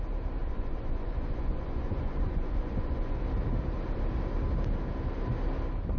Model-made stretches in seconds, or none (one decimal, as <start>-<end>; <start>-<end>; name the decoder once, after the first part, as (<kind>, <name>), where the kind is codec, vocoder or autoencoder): 0.4-3.2 (vocoder, Vocos)